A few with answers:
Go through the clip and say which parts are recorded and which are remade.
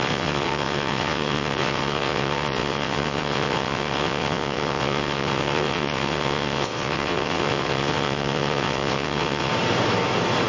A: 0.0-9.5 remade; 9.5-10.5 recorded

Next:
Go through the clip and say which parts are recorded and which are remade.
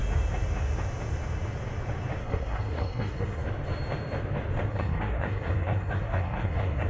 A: 0.0-2.2 recorded; 2.2-3.4 remade; 3.4-4.7 recorded; 4.7-6.9 remade